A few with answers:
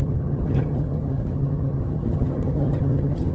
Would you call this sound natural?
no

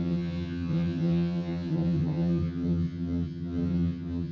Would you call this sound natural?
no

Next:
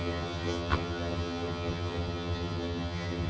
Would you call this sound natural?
no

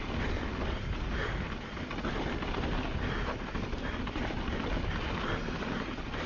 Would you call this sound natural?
yes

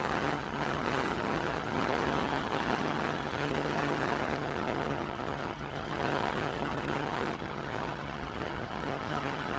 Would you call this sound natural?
no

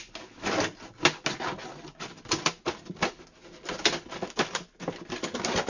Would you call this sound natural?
yes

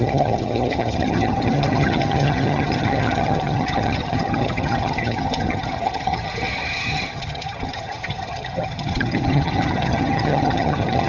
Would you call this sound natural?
no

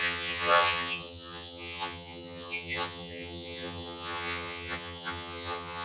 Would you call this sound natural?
no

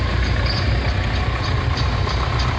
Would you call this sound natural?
yes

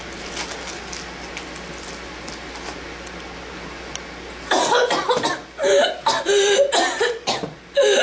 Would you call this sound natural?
yes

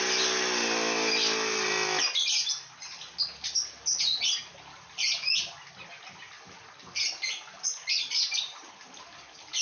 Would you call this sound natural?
yes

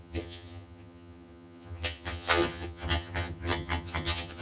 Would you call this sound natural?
no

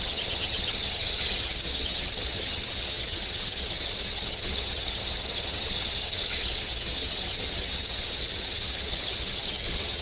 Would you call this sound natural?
no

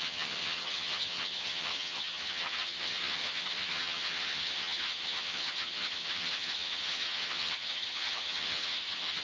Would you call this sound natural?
no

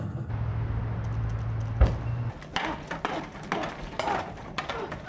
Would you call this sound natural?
yes